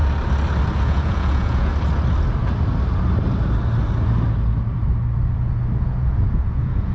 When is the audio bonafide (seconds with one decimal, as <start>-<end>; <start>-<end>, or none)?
0.0-0.8; 1.7-5.8